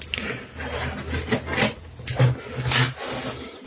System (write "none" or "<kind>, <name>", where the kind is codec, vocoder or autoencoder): none